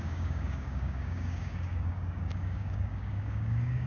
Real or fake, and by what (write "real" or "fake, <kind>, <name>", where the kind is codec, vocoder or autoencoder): fake, codec, DAC